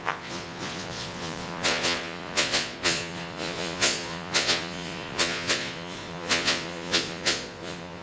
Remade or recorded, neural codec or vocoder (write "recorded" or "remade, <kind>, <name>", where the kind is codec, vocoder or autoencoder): remade, vocoder, Vocos